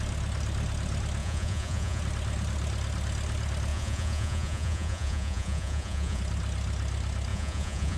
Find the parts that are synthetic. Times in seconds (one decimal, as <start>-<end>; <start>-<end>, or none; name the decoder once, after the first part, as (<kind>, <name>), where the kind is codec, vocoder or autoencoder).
1.2-2.0 (vocoder, Vocos); 3.7-6.2; 7.3-8.0

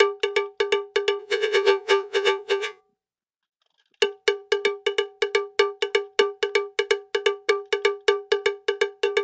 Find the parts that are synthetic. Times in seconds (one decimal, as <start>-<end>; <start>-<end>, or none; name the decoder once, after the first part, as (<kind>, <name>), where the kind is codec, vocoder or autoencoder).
1.2-2.8 (vocoder, Vocos)

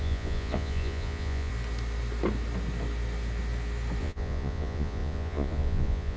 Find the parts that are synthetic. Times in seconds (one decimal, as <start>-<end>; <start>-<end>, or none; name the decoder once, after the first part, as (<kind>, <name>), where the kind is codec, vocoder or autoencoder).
0.0-1.5 (vocoder, Vocos); 4.0-6.2

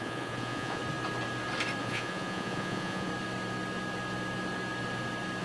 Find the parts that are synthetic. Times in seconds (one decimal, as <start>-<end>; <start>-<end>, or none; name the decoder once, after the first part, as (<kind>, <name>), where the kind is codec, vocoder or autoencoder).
0.0-0.8 (vocoder, Vocos); 1.8-3.1

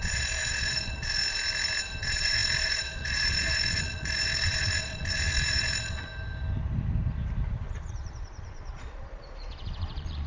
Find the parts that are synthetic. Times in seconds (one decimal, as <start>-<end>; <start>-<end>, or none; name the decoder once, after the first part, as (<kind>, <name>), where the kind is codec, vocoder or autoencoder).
0.0-1.2 (vocoder, Vocos); 2.0-6.1; 7.6-10.3

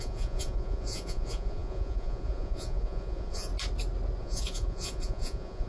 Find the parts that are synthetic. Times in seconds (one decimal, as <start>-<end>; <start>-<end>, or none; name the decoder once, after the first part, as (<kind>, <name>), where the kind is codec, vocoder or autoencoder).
0.0-3.5 (vocoder, Vocos); 4.2-5.7

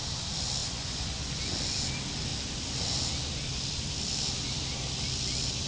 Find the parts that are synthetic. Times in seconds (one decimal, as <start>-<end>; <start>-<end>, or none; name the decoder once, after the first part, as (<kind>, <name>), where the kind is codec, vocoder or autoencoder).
0.6-1.4 (vocoder, Vocos)